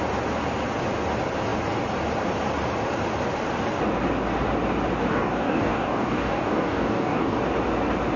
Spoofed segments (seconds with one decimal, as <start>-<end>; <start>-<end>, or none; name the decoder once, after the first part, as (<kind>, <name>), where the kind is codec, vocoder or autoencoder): 5.1-7.4 (codec, DAC)